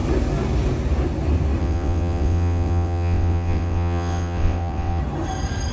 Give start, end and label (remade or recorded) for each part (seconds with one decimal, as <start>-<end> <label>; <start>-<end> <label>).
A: 0.0-1.6 recorded; 1.6-5.0 remade; 5.0-5.7 recorded